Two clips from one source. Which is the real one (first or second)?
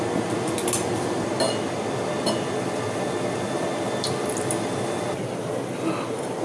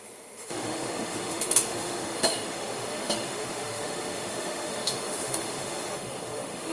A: first